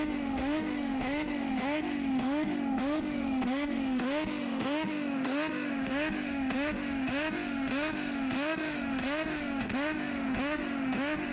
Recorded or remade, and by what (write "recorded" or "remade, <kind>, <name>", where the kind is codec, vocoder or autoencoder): remade, autoencoder, DAC-VAE